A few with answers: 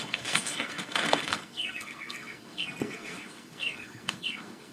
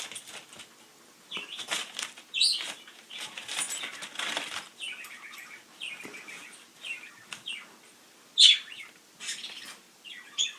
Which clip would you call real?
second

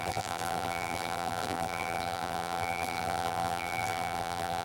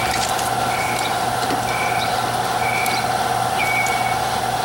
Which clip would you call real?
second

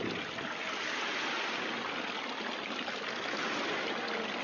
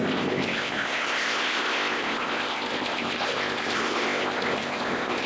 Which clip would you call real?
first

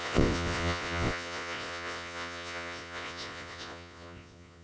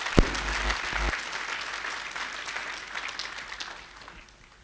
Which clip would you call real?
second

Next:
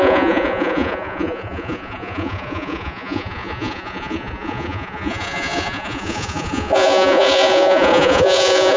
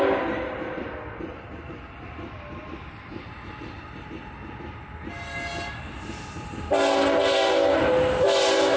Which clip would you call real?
second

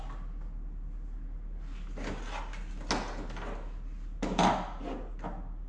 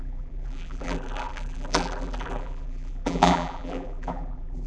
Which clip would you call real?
first